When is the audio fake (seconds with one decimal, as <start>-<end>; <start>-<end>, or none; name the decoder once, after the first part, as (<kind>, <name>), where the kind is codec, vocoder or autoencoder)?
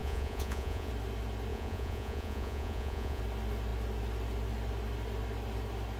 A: 0.0-0.9 (vocoder, Vocos); 1.5-3.2